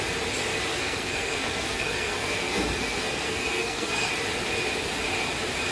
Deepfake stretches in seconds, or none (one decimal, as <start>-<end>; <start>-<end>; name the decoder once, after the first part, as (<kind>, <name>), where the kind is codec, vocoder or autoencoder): 0.7-4.1 (codec, SNAC)